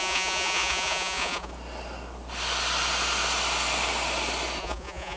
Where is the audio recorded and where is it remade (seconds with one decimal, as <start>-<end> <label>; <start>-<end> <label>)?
0.0-1.5 remade; 1.5-4.6 recorded; 4.6-5.2 remade